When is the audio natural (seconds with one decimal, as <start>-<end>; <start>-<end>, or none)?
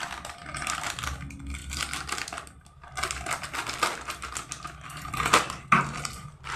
0.0-0.4; 1.2-6.6